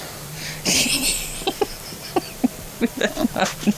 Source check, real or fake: fake